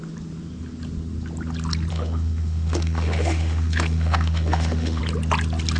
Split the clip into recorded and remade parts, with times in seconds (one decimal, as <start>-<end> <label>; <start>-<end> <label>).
0.0-1.9 recorded; 1.9-5.0 remade; 5.0-5.8 recorded